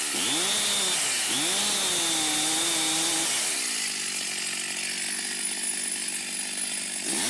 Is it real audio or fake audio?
real